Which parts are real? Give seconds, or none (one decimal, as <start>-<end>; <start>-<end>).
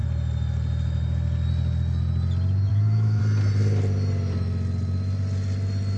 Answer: 0.0-2.7; 3.2-6.0